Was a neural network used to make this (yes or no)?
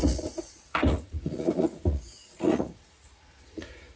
yes